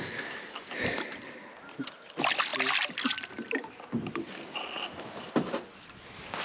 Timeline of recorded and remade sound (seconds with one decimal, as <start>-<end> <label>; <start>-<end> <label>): 0.0-6.4 recorded